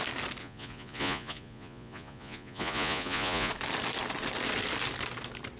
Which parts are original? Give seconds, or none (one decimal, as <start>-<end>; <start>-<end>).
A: 0.0-0.4; 3.5-5.6